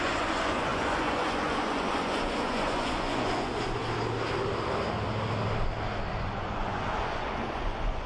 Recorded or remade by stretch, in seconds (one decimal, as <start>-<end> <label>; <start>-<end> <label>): 0.0-3.8 remade; 3.8-6.1 recorded; 6.1-8.1 remade